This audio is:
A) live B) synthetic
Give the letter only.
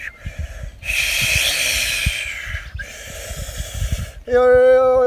A